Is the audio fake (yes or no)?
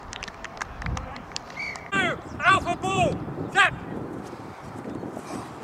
yes